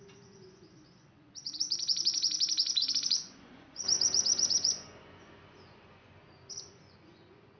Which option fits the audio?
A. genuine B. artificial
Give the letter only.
B